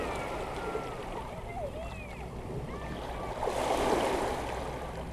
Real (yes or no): yes